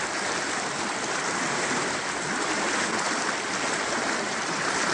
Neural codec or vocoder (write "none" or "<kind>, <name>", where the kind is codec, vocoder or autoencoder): none